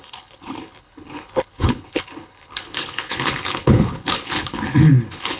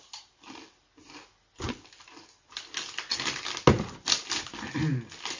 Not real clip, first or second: first